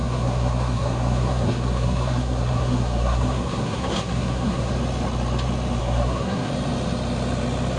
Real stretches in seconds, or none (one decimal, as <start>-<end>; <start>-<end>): 4.7-5.8; 6.5-7.8